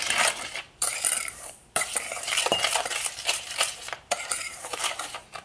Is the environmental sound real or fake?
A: fake